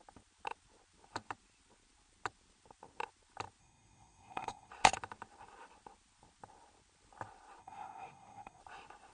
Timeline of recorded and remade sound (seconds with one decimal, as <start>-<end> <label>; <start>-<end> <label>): 0.0-3.6 recorded; 3.6-4.7 remade; 4.7-7.6 recorded; 7.6-8.6 remade; 8.6-9.1 recorded